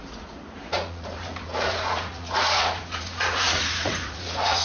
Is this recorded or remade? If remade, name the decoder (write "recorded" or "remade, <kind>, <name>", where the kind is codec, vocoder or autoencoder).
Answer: remade, vocoder, Vocos